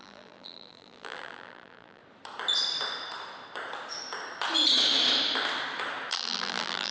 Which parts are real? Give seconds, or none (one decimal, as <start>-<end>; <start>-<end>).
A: 2.0-6.1